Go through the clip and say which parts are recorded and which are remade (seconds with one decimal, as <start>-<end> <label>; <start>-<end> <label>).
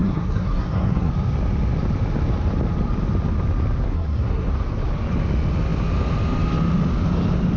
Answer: 0.0-1.1 remade; 1.1-3.9 recorded; 3.9-4.5 remade; 4.5-7.6 recorded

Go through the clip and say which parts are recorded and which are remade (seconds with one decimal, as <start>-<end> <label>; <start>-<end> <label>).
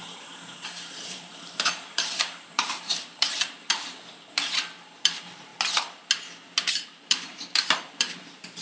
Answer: 0.0-5.5 remade; 5.5-6.7 recorded; 6.7-8.6 remade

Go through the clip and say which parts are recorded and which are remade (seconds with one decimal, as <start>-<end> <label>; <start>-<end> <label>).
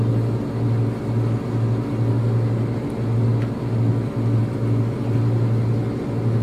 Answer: 0.0-6.4 recorded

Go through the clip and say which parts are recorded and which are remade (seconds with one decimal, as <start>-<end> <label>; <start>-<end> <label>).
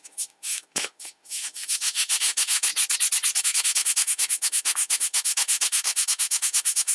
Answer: 0.0-2.7 remade; 2.7-3.4 recorded; 3.4-6.9 remade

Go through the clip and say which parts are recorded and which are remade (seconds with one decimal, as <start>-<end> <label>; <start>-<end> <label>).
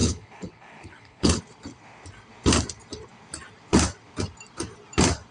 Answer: 0.0-1.4 remade; 1.4-5.3 recorded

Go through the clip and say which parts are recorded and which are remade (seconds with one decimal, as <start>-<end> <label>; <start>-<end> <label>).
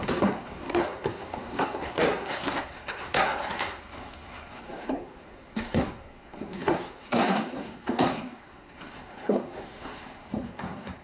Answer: 0.0-11.0 remade